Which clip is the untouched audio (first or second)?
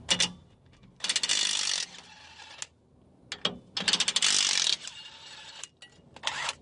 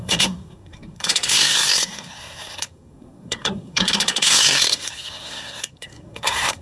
first